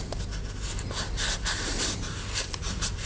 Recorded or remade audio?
recorded